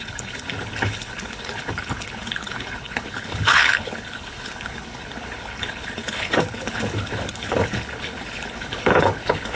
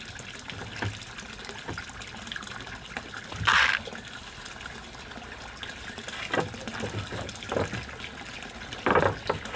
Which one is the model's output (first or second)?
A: first